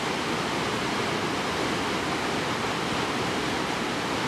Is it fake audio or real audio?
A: real